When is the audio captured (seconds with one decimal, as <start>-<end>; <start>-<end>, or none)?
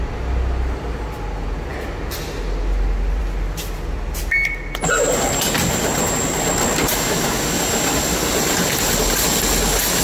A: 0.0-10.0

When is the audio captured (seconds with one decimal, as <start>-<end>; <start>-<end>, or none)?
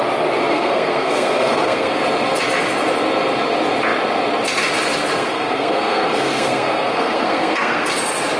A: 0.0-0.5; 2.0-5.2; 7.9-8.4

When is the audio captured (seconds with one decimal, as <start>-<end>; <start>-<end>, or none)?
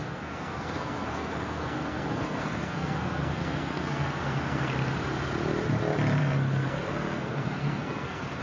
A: 4.7-6.2